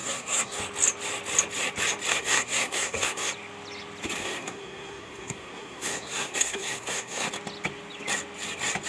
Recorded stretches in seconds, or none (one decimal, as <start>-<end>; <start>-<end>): 0.6-2.1; 3.3-4.2; 7.3-8.9